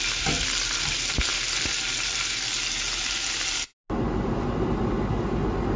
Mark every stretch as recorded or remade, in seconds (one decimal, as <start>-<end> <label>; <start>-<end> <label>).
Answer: 0.0-5.8 recorded